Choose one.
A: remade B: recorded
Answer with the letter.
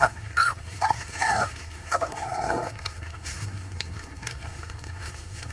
A